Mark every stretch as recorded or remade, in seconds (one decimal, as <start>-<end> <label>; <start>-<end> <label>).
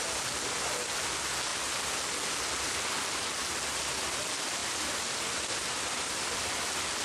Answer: 0.0-4.6 recorded; 4.6-6.1 remade; 6.1-7.0 recorded